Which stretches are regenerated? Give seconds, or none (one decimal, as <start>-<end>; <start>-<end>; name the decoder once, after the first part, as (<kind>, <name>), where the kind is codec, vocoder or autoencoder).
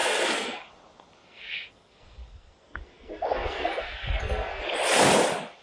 0.0-0.7 (codec, SNAC); 1.2-4.6